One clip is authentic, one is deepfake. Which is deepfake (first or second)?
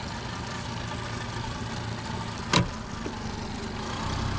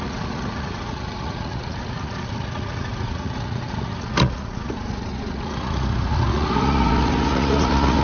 second